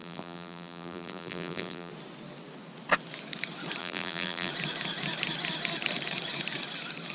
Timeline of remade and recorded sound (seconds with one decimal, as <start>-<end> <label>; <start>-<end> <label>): 0.0-1.9 remade; 1.9-3.8 recorded; 3.8-4.5 remade; 4.5-7.1 recorded